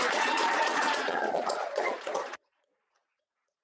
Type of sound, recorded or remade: remade